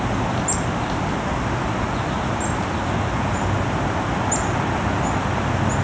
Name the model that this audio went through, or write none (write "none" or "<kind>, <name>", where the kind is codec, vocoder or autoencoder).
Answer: none